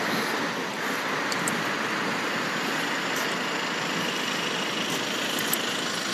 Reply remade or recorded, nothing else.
recorded